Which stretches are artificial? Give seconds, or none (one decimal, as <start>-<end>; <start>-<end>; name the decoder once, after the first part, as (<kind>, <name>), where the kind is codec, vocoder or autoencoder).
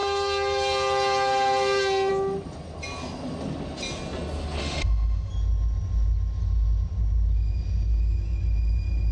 4.6-5.3 (autoencoder, DAC-VAE)